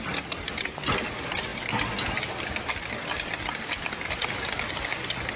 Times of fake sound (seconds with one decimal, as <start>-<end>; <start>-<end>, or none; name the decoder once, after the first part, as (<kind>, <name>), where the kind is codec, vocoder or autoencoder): none